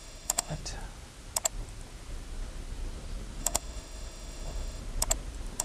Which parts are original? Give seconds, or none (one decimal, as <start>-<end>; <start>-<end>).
0.6-3.4; 4.8-5.6